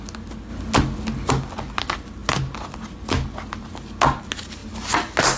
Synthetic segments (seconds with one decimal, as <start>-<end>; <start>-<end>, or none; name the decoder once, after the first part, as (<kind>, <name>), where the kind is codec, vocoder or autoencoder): none